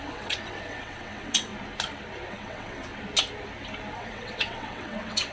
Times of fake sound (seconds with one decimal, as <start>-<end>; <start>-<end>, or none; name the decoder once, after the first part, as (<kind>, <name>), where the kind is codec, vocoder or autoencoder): 0.0-1.5 (vocoder, WaveNeXt); 2.3-2.9; 3.9-5.3